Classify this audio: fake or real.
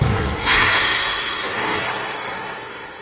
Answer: fake